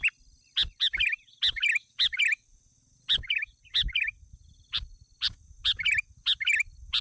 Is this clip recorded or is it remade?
recorded